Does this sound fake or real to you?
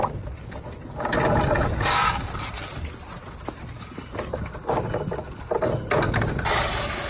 real